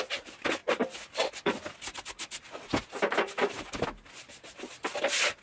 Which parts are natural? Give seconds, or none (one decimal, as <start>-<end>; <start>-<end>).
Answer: 0.0-5.4